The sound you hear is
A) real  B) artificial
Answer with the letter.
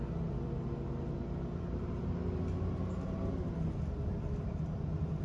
A